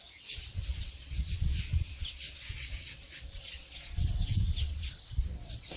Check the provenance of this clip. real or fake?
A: fake